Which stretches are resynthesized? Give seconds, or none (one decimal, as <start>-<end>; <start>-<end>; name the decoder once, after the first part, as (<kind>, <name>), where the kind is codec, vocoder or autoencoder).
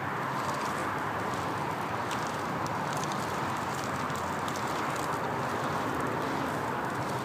0.8-4.2 (vocoder, BigVGAN v2)